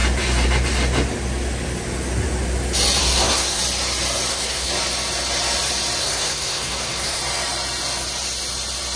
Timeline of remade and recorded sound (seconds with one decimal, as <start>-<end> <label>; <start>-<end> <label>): 0.0-3.0 recorded; 3.0-3.6 remade; 3.6-4.3 recorded; 4.3-4.7 remade; 4.7-6.0 recorded; 6.0-7.2 remade; 7.2-9.0 recorded